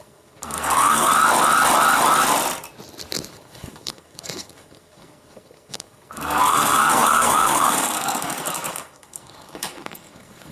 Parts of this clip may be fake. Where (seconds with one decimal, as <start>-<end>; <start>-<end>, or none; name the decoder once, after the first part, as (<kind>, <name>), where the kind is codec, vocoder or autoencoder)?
0.0-1.1 (codec, SNAC); 3.3-10.5